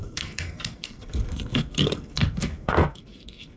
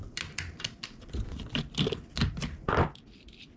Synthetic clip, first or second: first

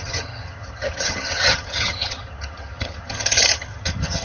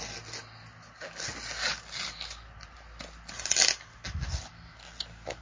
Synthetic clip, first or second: first